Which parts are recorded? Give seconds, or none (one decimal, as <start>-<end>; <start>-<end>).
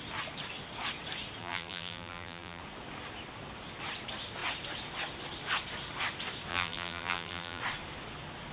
0.0-1.4; 2.6-6.5; 7.6-8.5